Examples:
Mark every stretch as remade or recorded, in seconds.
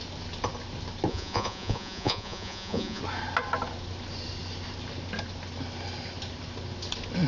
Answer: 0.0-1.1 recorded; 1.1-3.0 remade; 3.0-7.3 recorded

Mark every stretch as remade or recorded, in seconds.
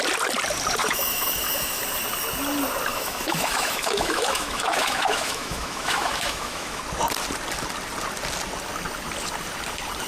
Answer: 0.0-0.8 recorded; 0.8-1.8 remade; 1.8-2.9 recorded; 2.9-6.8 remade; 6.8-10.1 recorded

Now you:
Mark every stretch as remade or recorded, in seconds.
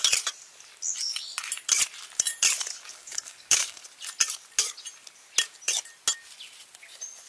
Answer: 0.0-2.9 recorded; 2.9-3.8 remade; 3.8-7.3 recorded